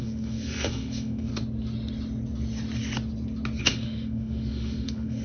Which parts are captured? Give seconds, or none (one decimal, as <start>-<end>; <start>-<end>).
1.3-3.6